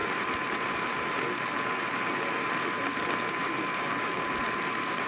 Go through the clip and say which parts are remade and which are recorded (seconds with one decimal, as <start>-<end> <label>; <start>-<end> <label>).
0.0-5.1 remade